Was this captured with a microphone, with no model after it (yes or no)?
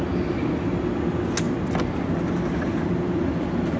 yes